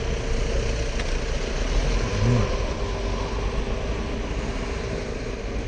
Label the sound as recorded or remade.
recorded